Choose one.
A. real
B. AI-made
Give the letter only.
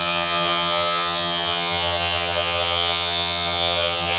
B